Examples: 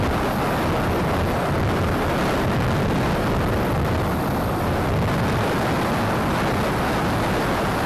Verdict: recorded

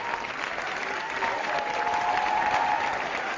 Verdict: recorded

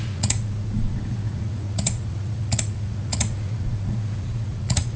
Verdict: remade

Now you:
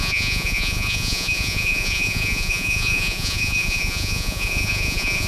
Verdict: remade